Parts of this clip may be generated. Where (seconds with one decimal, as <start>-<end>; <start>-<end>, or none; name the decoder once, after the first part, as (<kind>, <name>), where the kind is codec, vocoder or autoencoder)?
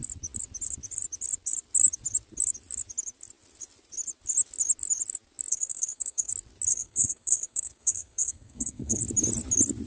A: 5.5-6.3 (codec, SNAC); 6.7-9.0